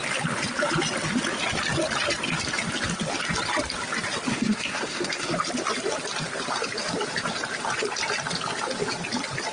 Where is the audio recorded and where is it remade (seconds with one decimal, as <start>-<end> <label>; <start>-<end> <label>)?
0.0-4.3 recorded; 4.3-5.3 remade; 5.3-9.5 recorded